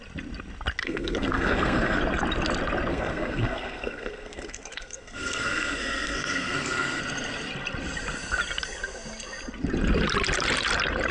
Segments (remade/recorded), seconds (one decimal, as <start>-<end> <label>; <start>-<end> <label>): 0.0-0.8 recorded; 0.8-2.0 remade; 2.0-2.9 recorded; 2.9-7.0 remade; 7.0-11.1 recorded